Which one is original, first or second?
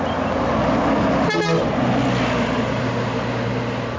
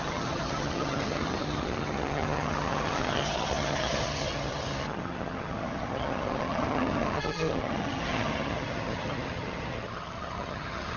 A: first